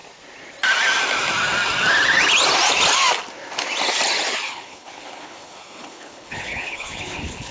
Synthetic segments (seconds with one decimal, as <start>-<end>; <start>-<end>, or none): 4.5-7.5